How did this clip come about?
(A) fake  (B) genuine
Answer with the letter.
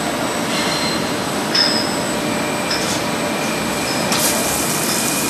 B